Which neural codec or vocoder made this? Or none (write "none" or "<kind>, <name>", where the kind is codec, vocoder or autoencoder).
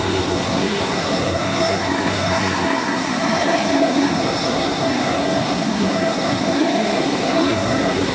codec, SNAC